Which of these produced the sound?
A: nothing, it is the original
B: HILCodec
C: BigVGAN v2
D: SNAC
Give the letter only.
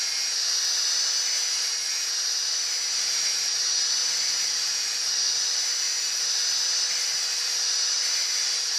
A